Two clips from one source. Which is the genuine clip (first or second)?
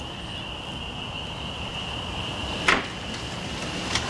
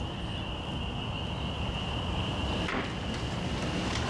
second